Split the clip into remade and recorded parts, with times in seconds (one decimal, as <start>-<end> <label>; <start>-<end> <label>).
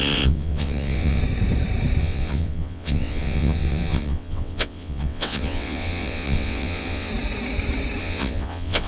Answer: 0.0-1.2 remade; 1.2-2.0 recorded; 2.0-7.1 remade; 7.1-8.0 recorded; 8.0-8.9 remade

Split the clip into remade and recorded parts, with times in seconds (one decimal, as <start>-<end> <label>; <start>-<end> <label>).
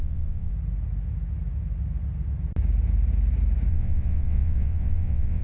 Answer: 0.0-0.5 remade; 0.5-3.7 recorded; 3.7-5.4 remade